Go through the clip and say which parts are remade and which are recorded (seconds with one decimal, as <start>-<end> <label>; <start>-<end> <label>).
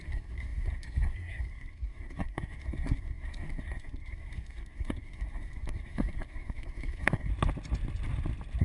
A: 0.0-7.3 remade; 7.3-8.6 recorded